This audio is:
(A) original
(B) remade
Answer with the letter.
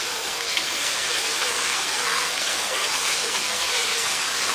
B